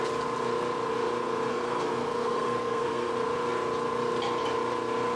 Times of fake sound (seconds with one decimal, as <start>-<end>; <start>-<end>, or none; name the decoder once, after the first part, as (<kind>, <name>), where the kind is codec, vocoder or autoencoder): 1.5-3.1 (codec, SNAC)